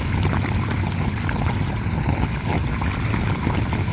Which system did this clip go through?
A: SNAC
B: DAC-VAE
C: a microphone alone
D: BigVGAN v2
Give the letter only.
C